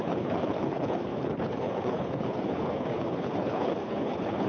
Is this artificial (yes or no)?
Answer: yes